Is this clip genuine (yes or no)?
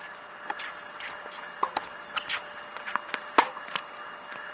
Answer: yes